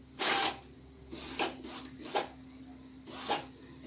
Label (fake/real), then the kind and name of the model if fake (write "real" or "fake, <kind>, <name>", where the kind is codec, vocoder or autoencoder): fake, vocoder, BigVGAN v2